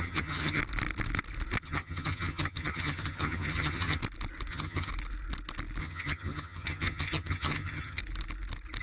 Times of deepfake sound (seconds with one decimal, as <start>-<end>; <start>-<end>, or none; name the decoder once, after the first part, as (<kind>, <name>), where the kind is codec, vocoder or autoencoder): 0.0-0.6 (vocoder, HiFi-GAN); 1.6-4.0; 4.5-4.9; 5.8-8.0